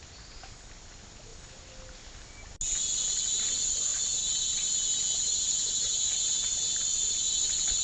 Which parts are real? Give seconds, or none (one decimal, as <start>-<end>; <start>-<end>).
0.0-7.8